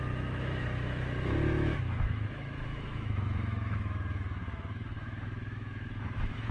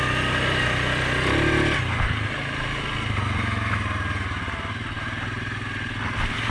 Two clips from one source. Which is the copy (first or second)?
first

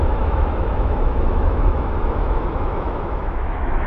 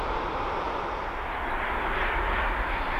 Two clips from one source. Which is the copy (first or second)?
first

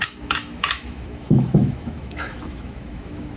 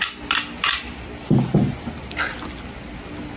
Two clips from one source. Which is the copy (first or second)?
first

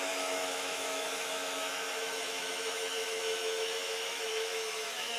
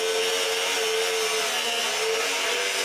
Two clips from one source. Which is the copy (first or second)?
first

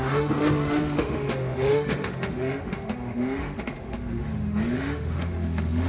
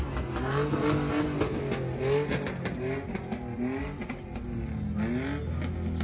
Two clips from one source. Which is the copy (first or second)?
first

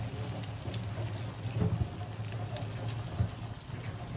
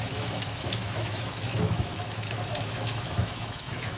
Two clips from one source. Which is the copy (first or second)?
second